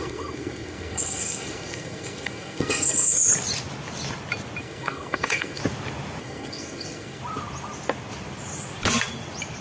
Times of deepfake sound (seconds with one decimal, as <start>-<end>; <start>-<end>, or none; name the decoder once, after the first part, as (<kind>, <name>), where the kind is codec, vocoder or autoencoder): 0.0-3.3 (codec, SNAC); 4.6-5.6; 6.2-7.2